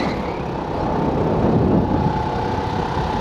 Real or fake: real